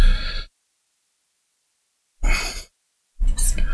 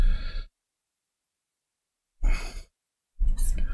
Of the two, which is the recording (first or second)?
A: first